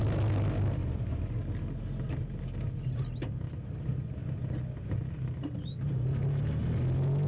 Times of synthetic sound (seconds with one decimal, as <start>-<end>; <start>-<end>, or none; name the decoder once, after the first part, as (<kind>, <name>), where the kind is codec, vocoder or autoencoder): 0.8-1.4 (vocoder, Vocos)